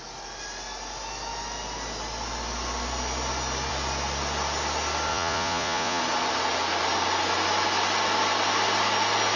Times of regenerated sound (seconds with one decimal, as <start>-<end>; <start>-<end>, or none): 5.1-6.0